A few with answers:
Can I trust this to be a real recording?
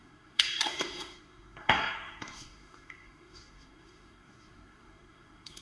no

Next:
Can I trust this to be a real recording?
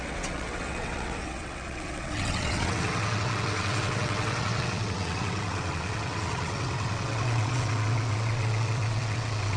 no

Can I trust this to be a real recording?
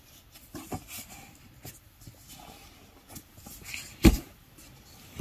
yes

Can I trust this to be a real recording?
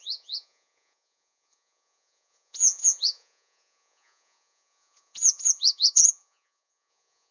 no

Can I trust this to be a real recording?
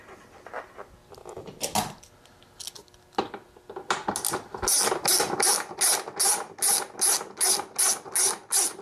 yes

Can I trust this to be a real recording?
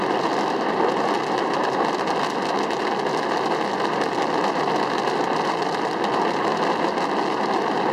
yes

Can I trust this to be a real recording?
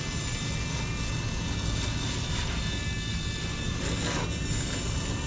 yes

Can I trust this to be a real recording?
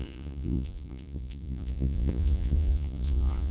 no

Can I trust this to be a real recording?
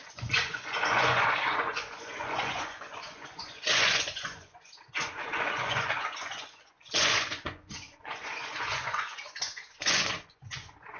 no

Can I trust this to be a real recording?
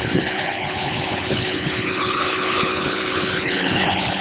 no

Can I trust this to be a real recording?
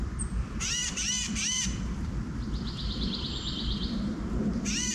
no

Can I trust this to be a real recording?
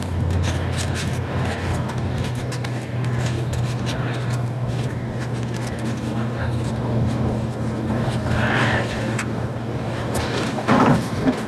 no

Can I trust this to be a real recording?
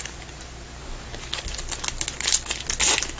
yes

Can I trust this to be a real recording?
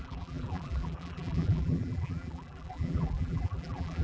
no